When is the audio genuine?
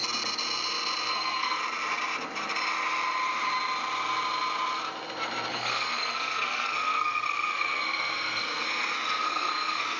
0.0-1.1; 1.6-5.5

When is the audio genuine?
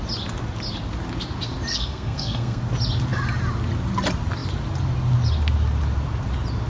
0.0-1.7; 2.6-6.7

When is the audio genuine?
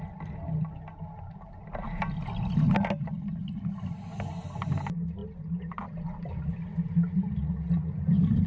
0.0-8.5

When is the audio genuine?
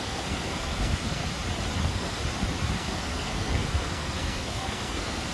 1.2-1.8; 2.2-2.7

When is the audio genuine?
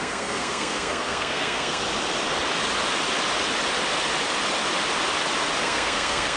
1.8-5.6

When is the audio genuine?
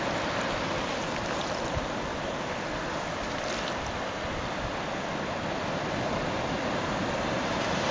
0.0-7.9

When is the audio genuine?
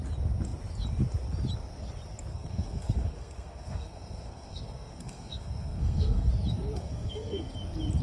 0.0-2.3; 6.3-6.8; 7.5-8.0